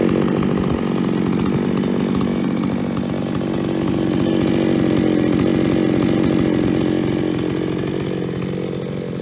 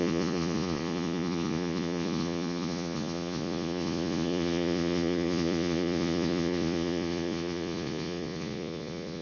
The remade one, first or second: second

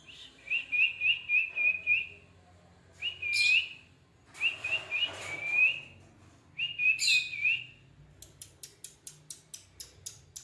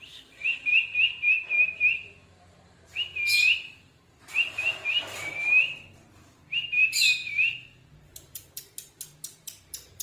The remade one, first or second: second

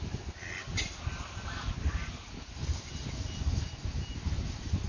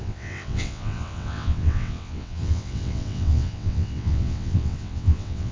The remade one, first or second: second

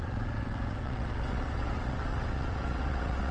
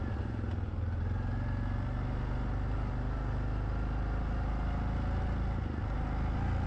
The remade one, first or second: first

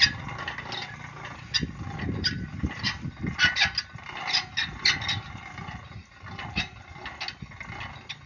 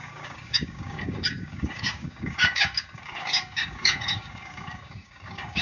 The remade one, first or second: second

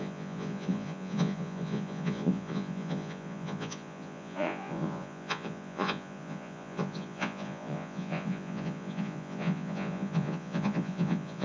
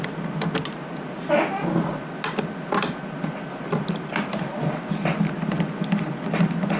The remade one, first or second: first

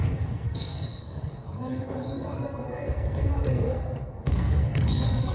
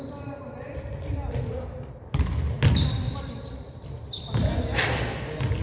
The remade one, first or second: first